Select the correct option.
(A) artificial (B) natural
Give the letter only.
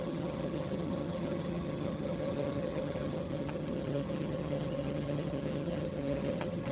A